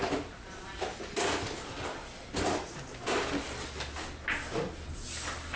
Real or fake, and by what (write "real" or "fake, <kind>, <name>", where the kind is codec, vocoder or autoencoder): real